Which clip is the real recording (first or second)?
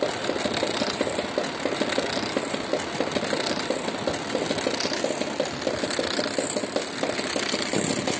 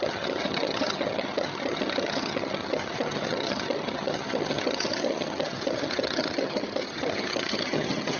first